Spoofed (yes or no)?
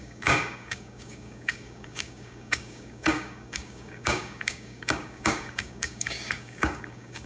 yes